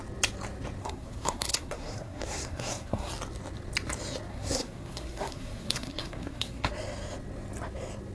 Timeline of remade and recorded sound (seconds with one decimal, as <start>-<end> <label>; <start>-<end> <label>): 0.0-0.8 recorded; 0.8-3.1 remade; 3.1-4.3 recorded; 4.3-6.7 remade; 6.7-8.1 recorded